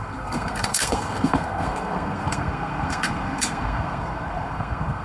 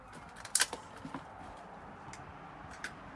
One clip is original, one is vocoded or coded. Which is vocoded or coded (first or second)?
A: first